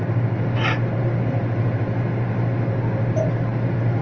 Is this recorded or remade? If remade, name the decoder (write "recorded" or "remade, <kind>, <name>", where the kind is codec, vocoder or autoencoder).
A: recorded